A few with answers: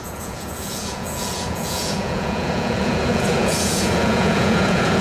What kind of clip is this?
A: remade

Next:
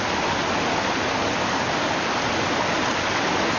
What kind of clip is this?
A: recorded